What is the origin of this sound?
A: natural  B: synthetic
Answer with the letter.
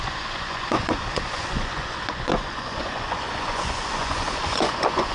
B